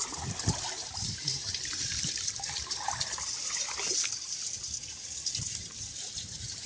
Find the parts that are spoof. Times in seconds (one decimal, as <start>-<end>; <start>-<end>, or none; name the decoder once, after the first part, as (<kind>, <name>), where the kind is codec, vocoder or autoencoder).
none